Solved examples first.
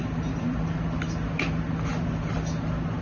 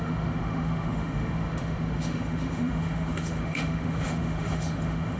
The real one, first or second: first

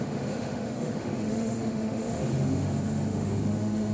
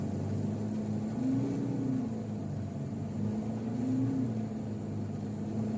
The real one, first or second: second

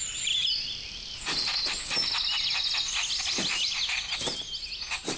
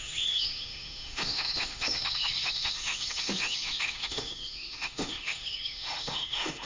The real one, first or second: first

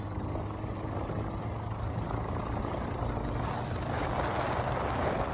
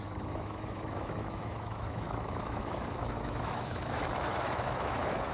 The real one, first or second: first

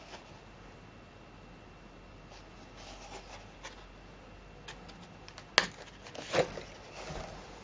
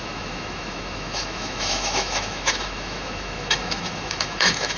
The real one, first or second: first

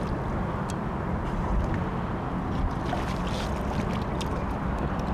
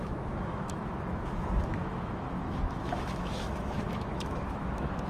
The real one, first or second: first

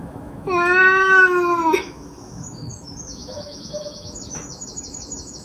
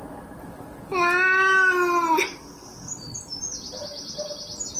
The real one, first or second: second